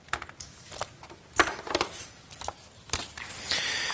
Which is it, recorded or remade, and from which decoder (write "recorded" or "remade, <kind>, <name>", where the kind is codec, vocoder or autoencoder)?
recorded